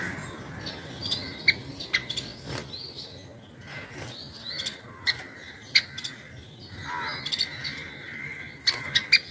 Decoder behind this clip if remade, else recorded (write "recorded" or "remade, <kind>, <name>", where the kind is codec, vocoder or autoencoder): recorded